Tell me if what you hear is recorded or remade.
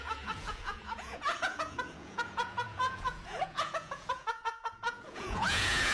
remade